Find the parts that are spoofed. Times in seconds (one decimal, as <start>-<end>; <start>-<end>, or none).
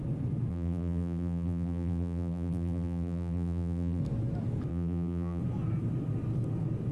0.5-4.0; 4.7-5.4